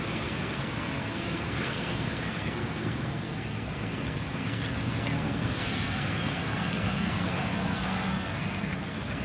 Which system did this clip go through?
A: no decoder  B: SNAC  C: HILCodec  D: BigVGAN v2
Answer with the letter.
B